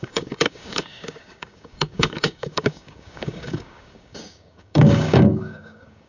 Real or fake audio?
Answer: fake